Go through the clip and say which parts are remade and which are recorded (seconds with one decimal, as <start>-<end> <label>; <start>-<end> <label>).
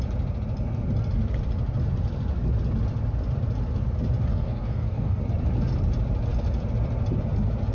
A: 0.0-4.3 recorded; 4.3-5.2 remade; 5.2-7.7 recorded